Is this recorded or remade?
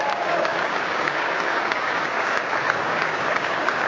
remade